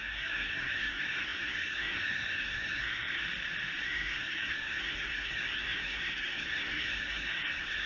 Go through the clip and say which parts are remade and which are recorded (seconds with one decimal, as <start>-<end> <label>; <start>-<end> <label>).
0.0-3.2 remade; 3.2-3.8 recorded; 3.8-7.9 remade